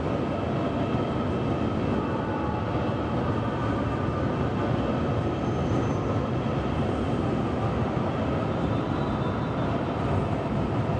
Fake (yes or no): no